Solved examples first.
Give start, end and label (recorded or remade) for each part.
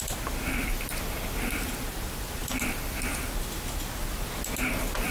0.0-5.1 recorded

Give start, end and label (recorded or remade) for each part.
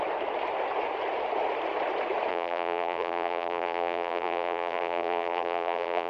0.0-2.3 recorded; 2.3-6.1 remade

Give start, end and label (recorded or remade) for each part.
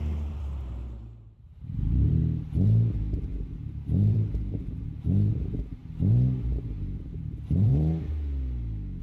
0.0-2.2 remade; 2.2-2.9 recorded; 2.9-5.8 remade; 5.8-6.5 recorded; 6.5-7.7 remade; 7.7-9.0 recorded